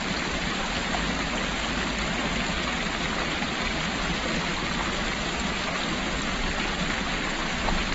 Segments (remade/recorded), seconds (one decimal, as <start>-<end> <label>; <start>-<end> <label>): 0.0-4.5 recorded; 4.5-7.1 remade; 7.1-7.9 recorded